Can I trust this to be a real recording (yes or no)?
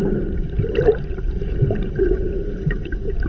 no